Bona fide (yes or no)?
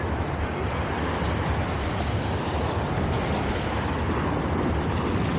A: yes